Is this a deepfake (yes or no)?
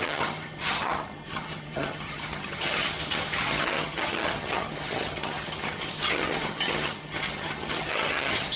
yes